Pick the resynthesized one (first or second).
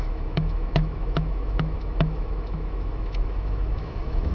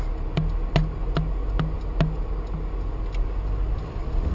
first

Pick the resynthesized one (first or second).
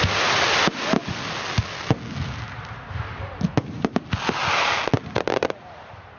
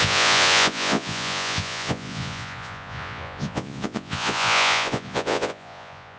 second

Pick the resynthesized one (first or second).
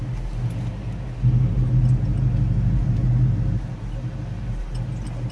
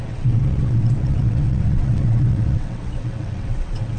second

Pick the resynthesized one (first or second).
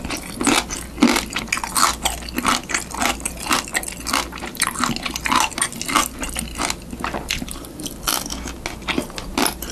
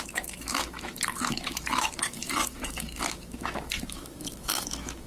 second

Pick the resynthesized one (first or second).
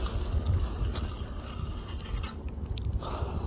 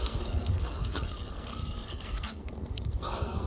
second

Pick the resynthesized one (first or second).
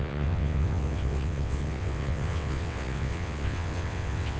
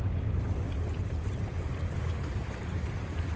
first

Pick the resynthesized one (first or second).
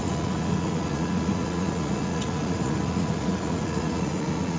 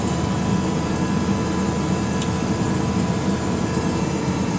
first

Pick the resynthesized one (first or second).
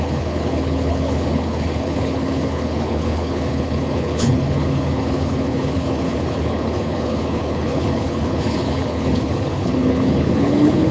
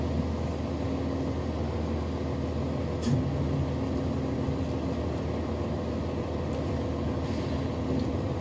first